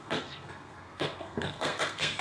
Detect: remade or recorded remade